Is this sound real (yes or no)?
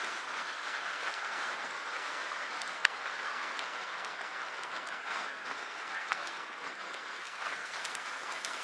no